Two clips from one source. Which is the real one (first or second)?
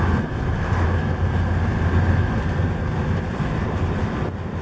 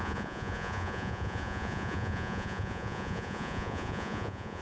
first